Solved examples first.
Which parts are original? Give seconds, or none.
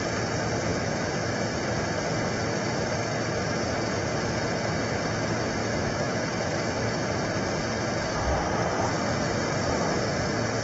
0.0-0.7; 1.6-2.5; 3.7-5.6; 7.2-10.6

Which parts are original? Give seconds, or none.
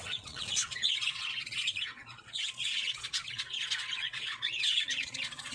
none